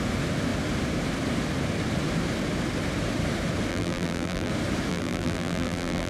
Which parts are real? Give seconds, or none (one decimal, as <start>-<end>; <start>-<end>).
0.0-3.7; 4.5-4.9